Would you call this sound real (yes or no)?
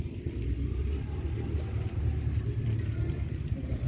yes